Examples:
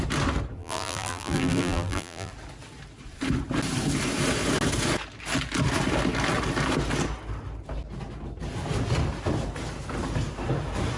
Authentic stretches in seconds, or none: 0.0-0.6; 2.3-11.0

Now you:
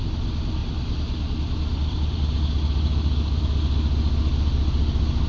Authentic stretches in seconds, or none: 0.0-0.6; 3.4-5.3

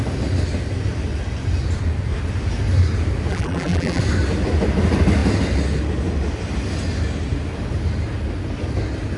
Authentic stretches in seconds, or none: 0.0-3.3; 4.0-9.2

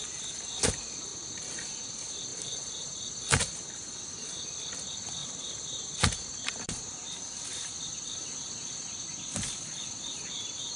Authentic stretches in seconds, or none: 0.0-1.1; 1.8-2.3; 3.5-5.2; 7.8-10.8

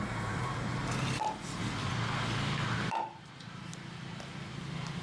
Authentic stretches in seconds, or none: 1.6-2.9; 3.7-4.5